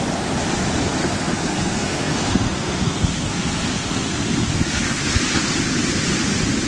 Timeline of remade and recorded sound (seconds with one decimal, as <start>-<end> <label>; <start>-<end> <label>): 0.0-1.0 recorded; 1.0-5.0 remade; 5.0-6.7 recorded